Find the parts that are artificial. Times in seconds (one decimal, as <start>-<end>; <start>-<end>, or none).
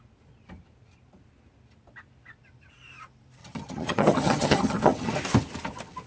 3.4-5.1